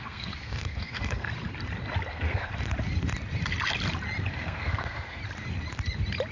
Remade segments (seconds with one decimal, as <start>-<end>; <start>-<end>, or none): 0.0-1.3; 2.1-2.5; 4.3-5.2